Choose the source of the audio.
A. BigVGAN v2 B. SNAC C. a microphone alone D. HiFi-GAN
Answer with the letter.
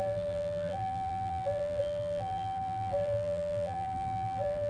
A